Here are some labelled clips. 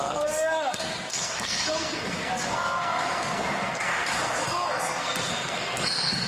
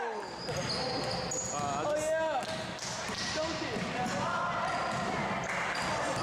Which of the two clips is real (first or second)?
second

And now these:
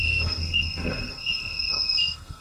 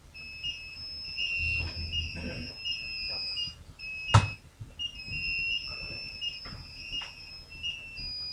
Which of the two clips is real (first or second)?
second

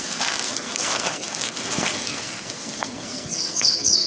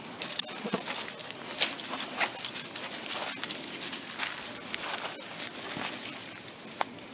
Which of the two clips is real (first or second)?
second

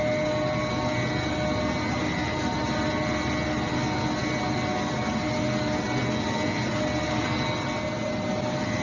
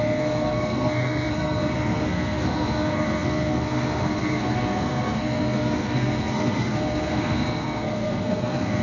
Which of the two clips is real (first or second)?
first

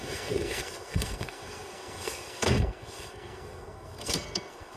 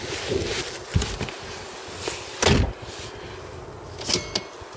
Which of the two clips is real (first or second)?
second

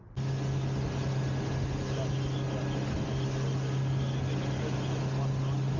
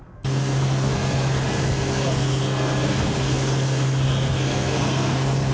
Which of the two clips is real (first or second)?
first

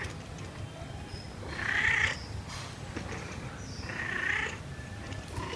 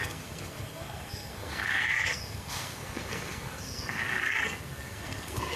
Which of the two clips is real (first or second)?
first